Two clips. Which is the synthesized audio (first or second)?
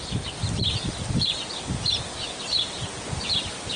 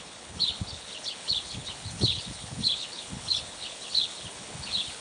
second